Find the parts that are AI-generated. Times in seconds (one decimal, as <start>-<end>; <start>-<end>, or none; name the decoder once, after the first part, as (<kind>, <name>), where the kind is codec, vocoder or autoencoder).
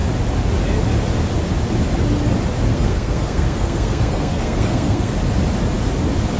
2.7-5.1 (codec, SNAC)